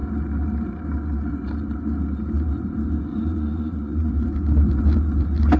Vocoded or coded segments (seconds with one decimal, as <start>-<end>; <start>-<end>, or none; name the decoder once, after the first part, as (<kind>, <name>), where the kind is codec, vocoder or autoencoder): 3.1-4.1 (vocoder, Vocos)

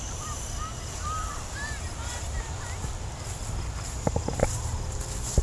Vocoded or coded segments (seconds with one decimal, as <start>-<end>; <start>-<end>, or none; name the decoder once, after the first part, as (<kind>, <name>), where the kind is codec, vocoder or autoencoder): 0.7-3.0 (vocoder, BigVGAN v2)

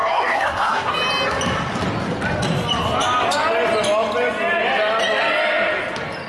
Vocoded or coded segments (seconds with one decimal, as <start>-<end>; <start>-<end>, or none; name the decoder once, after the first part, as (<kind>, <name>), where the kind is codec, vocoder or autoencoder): 0.0-0.9 (codec, SNAC)

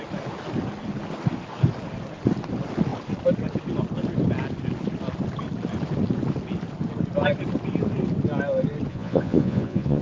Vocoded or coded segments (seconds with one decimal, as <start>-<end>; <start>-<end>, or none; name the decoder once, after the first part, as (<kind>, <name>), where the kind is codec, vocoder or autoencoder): 8.9-10.0 (vocoder, Vocos)

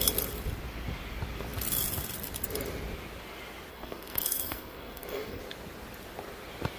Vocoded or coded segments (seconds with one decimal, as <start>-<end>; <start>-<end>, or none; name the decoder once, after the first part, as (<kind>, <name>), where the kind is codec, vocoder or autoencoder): 3.7-5.4 (codec, SNAC)